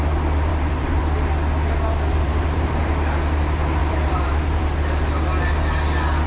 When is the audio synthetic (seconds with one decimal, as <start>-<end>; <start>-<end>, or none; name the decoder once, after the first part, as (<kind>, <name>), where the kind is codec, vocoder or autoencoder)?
0.5-1.0 (vocoder, BigVGAN v2); 2.1-2.9; 3.8-4.6